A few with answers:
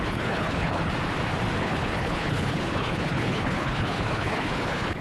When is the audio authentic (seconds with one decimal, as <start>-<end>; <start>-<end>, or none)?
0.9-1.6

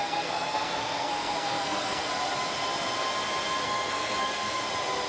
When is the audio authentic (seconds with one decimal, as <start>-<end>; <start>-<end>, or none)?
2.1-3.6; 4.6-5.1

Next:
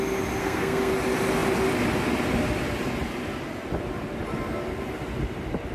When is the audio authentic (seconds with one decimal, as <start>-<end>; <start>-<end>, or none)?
0.0-0.4; 0.9-5.7

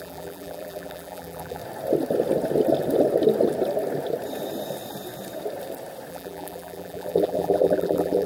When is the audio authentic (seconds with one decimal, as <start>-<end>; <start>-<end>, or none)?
1.6-6.1

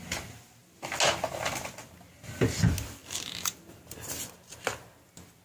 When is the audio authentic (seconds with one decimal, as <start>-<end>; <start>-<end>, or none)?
0.0-5.4